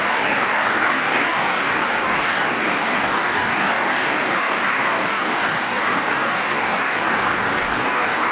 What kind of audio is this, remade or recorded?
remade